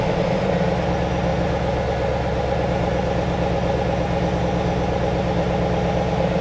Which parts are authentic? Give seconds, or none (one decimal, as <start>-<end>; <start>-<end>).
0.0-6.4